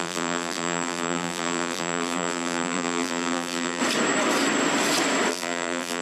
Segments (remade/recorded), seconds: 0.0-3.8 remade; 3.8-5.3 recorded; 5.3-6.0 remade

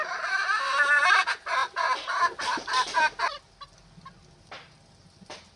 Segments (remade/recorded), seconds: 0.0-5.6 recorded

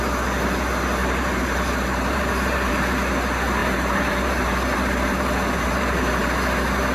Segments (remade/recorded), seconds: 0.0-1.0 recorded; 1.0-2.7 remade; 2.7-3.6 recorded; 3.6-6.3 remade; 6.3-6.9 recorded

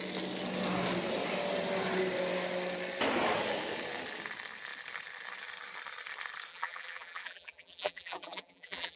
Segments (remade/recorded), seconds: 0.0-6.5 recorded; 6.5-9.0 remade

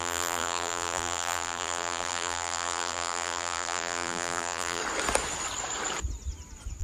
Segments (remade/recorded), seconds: 0.0-4.8 remade; 4.8-6.8 recorded

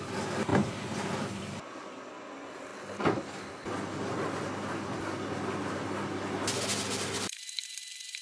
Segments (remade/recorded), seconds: 0.0-2.7 remade; 2.7-7.5 recorded; 7.5-8.2 remade